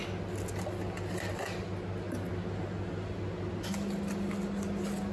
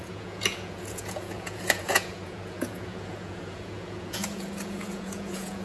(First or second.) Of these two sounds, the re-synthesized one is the second